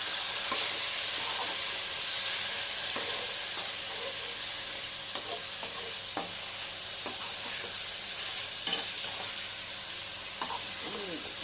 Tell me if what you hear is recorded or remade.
recorded